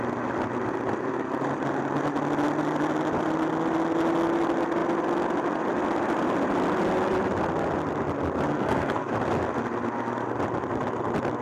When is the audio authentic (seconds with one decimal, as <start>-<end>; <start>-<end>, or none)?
0.0-8.5; 9.1-11.4